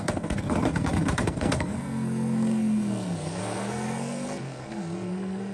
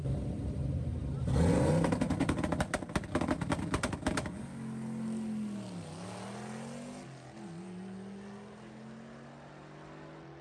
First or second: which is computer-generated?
first